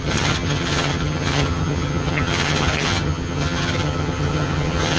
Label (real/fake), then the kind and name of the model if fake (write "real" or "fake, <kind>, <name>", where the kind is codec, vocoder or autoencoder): fake, vocoder, HiFi-GAN